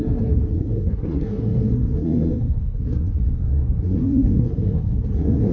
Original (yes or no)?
no